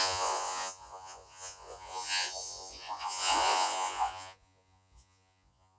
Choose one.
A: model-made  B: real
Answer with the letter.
A